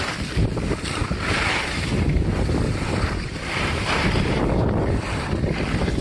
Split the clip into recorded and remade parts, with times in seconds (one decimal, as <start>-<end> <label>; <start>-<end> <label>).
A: 0.0-1.0 remade; 1.0-2.4 recorded; 2.4-6.0 remade